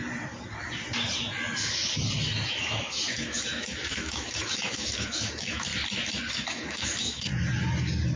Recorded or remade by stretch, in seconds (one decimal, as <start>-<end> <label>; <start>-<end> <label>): 0.0-2.5 recorded; 2.5-5.7 remade; 5.7-6.3 recorded; 6.3-7.3 remade; 7.3-8.2 recorded